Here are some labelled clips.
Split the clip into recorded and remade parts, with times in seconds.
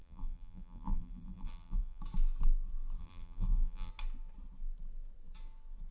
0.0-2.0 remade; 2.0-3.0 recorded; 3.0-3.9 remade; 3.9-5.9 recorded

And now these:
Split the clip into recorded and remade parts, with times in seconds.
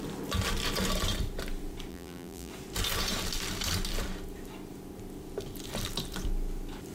0.0-1.9 recorded; 1.9-2.5 remade; 2.5-6.9 recorded